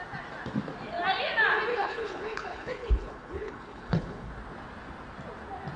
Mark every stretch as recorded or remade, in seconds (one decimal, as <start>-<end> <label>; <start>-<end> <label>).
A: 0.0-1.7 recorded; 1.7-4.3 remade; 4.3-5.8 recorded